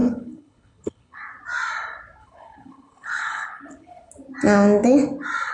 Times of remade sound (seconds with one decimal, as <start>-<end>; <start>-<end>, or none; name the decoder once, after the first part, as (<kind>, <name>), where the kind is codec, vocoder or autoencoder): 0.0-1.2 (codec, HILCodec); 2.2-4.1